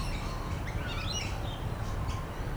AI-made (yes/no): no